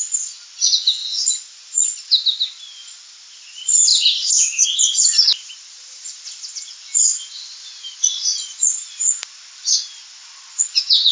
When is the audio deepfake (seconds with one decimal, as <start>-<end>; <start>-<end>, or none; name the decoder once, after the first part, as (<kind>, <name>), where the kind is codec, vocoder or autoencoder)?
3.9-6.7 (vocoder, BigVGAN v2)